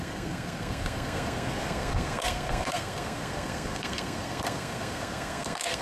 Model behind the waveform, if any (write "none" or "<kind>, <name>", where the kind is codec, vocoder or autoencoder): codec, SNAC